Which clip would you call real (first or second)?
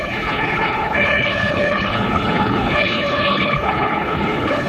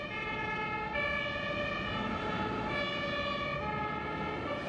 second